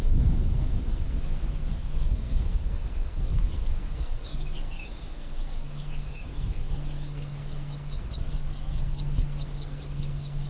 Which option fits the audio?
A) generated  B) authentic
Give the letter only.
A